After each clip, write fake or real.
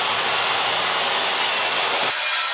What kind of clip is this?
real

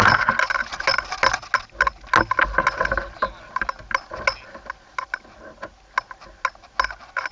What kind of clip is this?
real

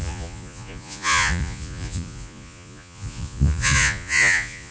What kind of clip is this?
fake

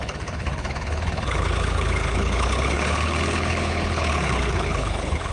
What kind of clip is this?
fake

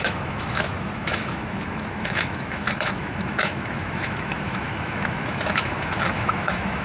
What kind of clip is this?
fake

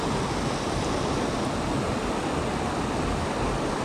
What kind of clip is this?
real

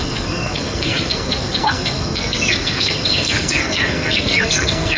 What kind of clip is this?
fake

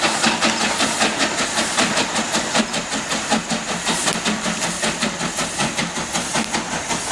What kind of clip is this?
real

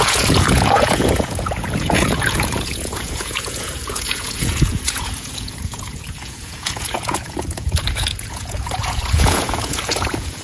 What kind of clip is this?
fake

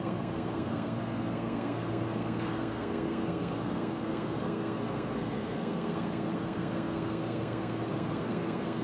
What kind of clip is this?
fake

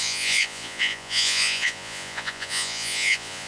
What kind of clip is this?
fake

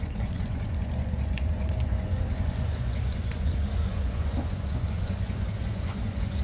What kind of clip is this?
fake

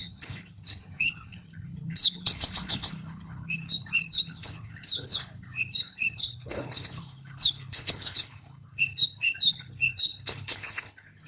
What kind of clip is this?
fake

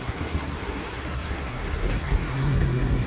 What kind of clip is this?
fake